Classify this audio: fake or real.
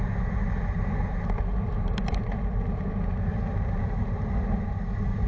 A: fake